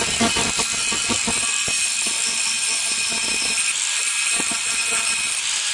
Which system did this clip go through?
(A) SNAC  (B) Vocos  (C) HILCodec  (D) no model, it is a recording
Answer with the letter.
D